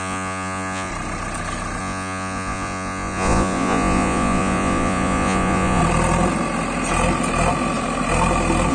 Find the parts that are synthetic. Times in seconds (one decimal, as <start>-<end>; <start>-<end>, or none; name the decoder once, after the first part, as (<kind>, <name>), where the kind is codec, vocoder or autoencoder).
0.0-0.9 (vocoder, Vocos); 1.8-5.8